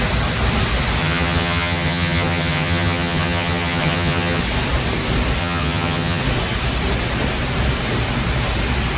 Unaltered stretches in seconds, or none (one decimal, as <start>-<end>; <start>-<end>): 0.0-1.0; 4.4-5.4; 6.2-9.0

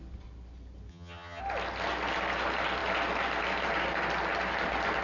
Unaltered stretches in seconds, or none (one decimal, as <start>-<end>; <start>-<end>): 0.0-0.9; 1.4-5.0

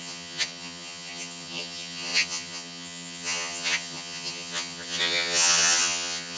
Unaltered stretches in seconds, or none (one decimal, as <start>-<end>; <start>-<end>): none

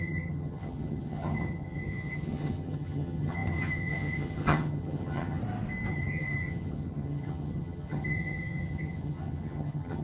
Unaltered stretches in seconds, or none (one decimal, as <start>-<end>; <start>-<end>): 5.4-5.9

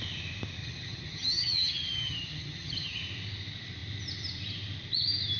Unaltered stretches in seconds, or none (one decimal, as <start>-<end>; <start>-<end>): 0.0-0.6; 3.0-5.4

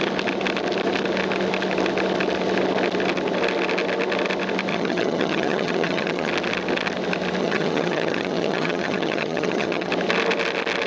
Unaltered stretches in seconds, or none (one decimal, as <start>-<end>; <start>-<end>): 0.0-4.7; 6.3-7.4; 9.9-10.9